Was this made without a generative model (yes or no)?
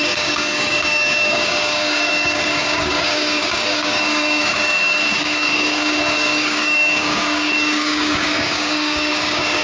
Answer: no